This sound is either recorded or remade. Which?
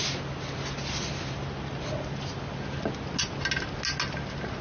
recorded